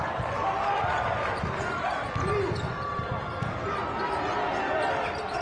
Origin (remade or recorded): recorded